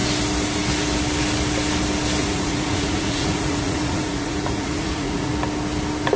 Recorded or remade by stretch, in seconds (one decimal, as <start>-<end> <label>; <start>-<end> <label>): 0.0-2.2 recorded; 2.2-5.3 remade; 5.3-6.2 recorded